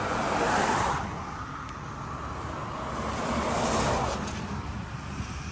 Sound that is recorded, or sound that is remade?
recorded